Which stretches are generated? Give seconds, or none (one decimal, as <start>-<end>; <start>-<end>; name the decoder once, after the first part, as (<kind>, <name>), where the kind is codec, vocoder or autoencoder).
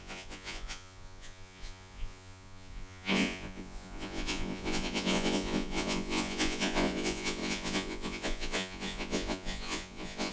0.0-10.3 (vocoder, Vocos)